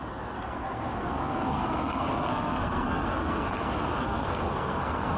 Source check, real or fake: fake